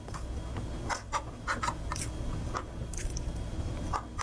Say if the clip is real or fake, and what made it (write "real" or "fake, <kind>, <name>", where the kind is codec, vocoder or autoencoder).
real